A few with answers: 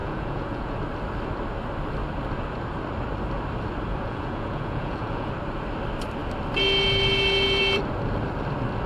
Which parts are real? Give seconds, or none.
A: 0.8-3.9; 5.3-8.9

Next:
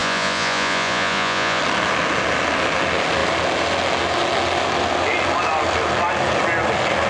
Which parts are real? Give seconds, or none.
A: 1.6-7.1

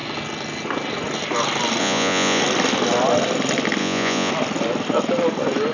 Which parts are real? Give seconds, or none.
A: 0.0-1.8; 2.4-3.8; 4.3-5.7

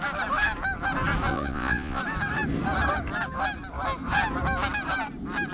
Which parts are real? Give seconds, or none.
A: 0.0-1.3; 2.0-5.5

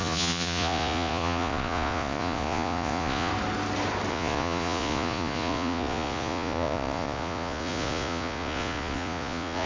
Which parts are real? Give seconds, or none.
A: 3.3-4.1

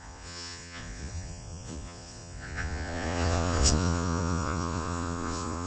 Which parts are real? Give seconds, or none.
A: none

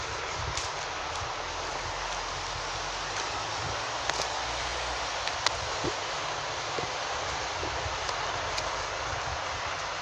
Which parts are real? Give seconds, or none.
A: 0.0-10.0

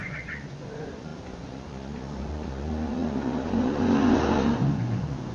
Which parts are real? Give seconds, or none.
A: none